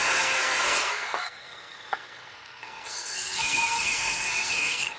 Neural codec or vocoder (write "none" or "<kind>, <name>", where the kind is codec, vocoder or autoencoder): codec, SNAC